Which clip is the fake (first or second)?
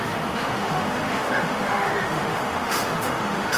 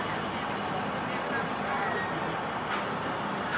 first